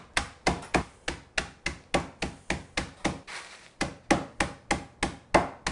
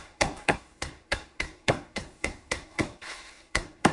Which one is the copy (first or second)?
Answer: second